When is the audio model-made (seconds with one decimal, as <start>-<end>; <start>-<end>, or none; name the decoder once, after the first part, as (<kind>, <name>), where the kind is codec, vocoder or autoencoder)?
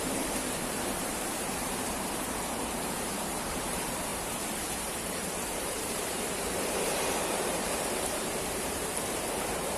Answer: 0.0-9.8 (vocoder, BigVGAN v2)